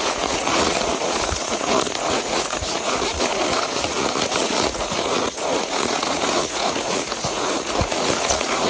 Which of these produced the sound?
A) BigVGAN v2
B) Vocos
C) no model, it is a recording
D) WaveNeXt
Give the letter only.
B